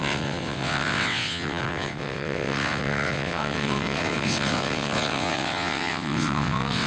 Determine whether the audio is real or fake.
fake